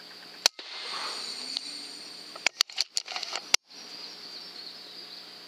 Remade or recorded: recorded